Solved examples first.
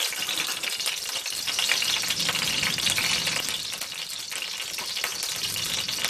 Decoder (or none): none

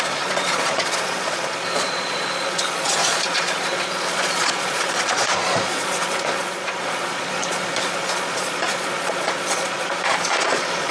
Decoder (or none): vocoder, Vocos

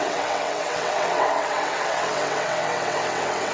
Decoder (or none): vocoder, WaveNeXt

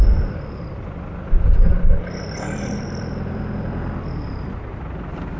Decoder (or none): vocoder, BigVGAN v2